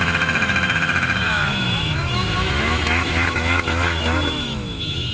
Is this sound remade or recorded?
remade